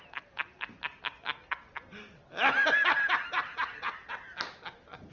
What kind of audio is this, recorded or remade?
recorded